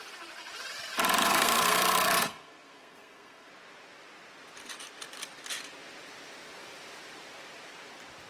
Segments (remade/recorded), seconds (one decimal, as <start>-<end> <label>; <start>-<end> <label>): 0.0-1.2 recorded; 1.2-3.5 remade; 3.5-8.3 recorded